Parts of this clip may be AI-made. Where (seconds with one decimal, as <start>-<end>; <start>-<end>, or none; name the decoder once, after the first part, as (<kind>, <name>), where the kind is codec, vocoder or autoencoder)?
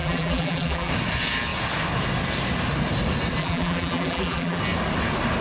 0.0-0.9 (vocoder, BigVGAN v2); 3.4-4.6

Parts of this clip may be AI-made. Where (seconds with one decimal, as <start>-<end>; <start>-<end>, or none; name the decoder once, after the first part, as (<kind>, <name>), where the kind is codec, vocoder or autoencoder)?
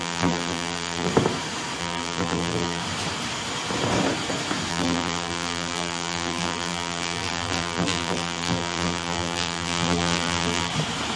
0.0-1.1 (vocoder, BigVGAN v2); 1.8-2.8; 4.7-10.7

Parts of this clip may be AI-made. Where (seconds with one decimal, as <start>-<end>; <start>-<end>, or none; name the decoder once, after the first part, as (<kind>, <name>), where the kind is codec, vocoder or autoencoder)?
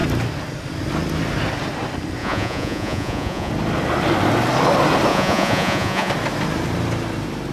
2.2-3.5 (vocoder, Vocos); 5.1-6.1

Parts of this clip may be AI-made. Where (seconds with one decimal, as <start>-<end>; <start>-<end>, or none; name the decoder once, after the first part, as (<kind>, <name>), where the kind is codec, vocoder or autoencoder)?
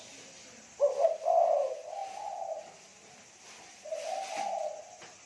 none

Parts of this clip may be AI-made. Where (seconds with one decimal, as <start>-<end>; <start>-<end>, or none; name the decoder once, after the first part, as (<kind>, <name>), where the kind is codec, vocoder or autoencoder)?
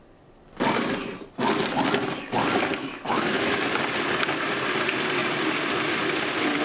2.8-3.6 (autoencoder, DAC-VAE)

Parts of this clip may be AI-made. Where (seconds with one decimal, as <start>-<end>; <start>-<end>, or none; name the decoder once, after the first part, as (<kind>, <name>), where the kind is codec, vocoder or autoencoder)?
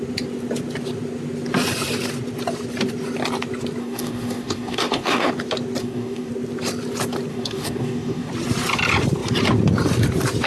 3.8-5.3 (codec, DAC); 5.8-6.3; 7.3-8.3